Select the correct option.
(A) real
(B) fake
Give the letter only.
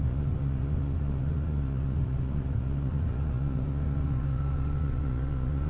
B